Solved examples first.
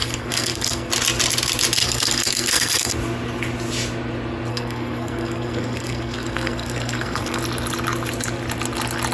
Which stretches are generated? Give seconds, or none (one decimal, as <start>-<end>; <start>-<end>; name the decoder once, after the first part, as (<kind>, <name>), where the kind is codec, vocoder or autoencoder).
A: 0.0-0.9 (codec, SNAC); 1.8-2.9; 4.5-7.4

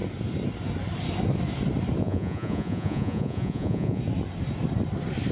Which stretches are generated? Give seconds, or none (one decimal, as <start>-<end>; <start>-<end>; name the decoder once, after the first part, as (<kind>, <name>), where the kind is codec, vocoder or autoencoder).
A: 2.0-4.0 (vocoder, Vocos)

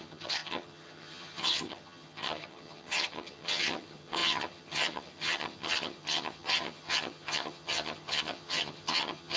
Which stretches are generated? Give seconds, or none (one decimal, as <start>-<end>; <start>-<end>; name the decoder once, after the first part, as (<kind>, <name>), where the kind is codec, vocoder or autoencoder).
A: 0.0-9.4 (vocoder, HiFi-GAN)

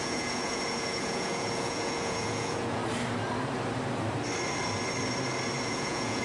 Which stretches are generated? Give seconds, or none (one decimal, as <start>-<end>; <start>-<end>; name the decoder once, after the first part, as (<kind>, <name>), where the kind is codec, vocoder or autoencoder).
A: 0.0-2.8 (vocoder, Vocos); 5.6-6.2

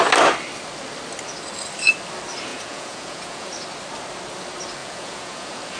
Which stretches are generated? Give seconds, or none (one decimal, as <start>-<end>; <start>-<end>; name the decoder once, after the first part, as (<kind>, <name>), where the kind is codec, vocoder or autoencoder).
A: 2.5-3.5 (vocoder, Vocos); 4.8-5.8